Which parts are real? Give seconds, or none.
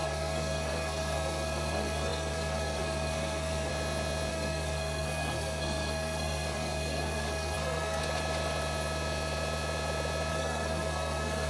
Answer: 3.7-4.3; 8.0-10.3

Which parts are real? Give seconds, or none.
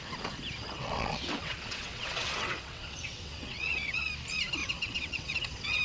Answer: 0.0-0.6; 4.1-4.6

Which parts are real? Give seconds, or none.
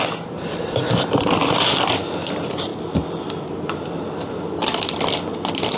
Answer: 0.0-5.8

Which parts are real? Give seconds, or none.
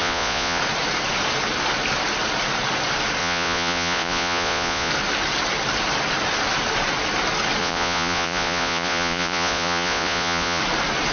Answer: 0.6-3.2; 4.9-7.6; 10.6-11.1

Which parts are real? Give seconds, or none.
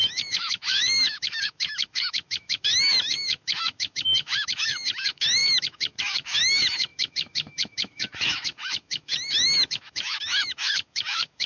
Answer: none